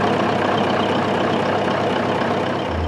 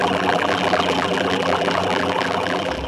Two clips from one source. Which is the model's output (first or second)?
second